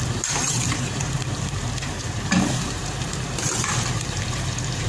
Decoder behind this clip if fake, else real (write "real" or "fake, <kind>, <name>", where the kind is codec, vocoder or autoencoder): fake, vocoder, BigVGAN v2